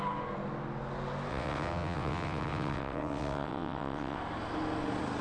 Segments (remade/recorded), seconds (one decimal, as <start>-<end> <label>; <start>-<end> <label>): 0.0-1.3 recorded; 1.3-4.2 remade; 4.2-5.2 recorded